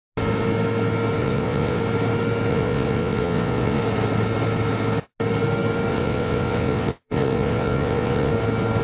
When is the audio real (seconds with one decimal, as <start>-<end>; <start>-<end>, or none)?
0.0-1.2; 1.8-2.5; 3.8-5.9; 8.3-8.8

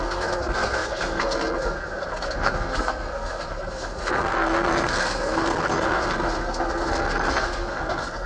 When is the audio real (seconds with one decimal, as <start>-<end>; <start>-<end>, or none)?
none

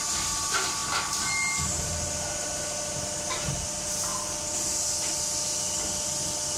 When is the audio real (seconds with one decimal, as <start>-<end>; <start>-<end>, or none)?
0.0-6.6

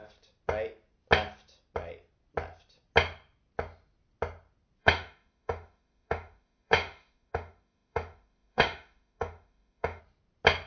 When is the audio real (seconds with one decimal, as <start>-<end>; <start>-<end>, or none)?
0.0-4.8; 10.0-10.7

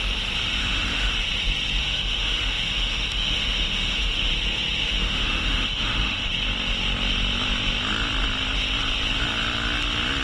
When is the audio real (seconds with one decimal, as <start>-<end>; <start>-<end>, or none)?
0.0-0.6; 1.1-1.8; 4.3-4.8; 6.3-10.2

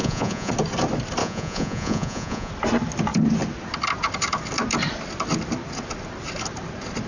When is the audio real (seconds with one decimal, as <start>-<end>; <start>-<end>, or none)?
0.5-1.2; 2.5-7.1

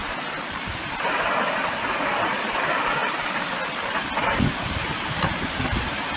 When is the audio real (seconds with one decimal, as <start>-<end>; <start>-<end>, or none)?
0.0-6.2

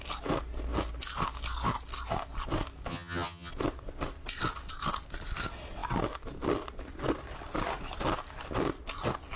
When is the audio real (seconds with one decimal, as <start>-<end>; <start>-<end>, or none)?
0.0-2.9; 3.5-9.4